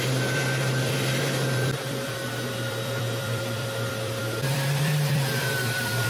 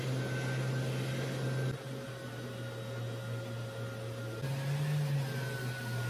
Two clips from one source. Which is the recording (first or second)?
second